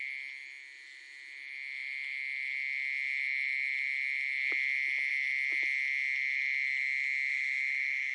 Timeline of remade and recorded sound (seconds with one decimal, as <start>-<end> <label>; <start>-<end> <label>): 0.0-7.3 recorded; 7.3-8.1 remade